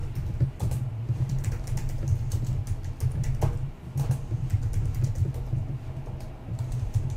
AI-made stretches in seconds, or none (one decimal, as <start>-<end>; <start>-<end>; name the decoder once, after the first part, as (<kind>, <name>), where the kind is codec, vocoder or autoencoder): 0.0-1.5 (vocoder, BigVGAN v2)